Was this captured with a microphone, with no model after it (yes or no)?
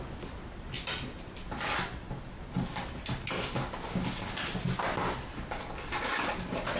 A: yes